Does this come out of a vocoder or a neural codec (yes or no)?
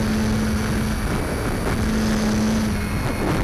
no